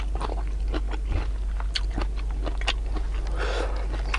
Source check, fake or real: real